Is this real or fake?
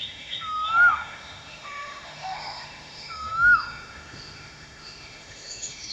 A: fake